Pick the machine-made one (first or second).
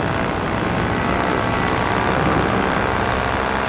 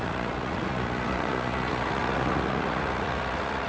second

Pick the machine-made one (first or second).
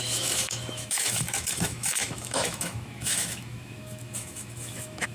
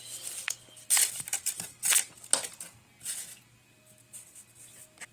first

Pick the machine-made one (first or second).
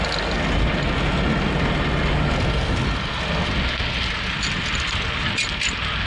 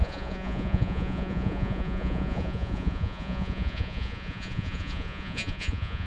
second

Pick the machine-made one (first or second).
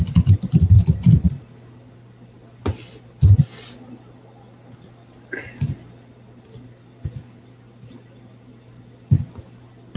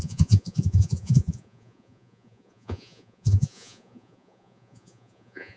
second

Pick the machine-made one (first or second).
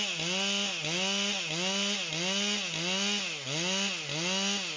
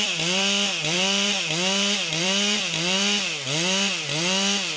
second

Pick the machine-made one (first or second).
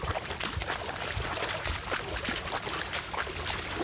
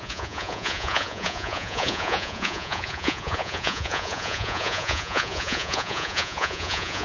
second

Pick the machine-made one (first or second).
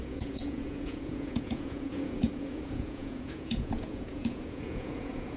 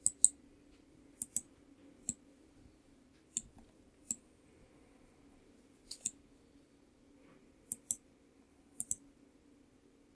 first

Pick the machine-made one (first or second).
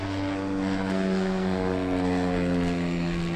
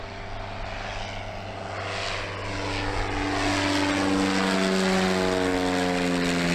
first